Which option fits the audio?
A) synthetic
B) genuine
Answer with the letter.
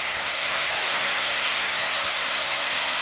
A